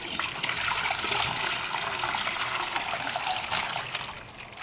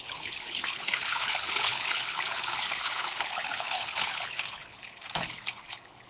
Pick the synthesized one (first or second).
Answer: second